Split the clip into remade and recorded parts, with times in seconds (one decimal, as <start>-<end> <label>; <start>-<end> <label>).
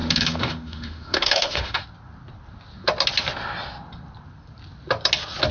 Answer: 0.0-1.8 remade; 1.8-5.5 recorded